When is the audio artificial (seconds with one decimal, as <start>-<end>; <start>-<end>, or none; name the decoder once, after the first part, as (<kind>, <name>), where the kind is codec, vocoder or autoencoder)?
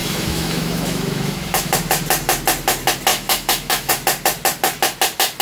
0.0-1.7 (autoencoder, DAC-VAE); 3.1-3.9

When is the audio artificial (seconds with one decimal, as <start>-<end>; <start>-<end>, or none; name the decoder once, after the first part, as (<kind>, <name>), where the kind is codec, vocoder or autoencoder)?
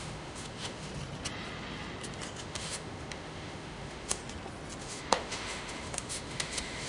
0.0-0.9 (autoencoder, DAC-VAE); 2.4-4.2; 4.8-6.9